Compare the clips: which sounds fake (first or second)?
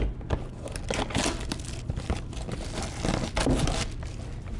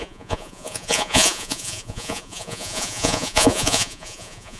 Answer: second